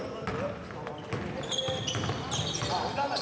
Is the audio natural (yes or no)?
yes